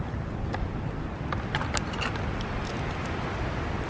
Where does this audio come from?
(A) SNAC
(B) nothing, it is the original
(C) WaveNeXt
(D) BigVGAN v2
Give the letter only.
B